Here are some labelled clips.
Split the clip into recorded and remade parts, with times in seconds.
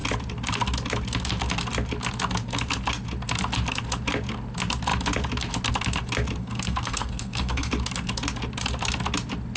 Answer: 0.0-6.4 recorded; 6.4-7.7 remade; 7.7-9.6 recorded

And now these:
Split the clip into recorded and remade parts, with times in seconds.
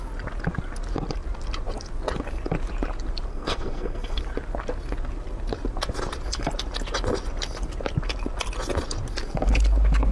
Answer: 0.0-3.3 recorded; 3.3-4.2 remade; 4.2-10.1 recorded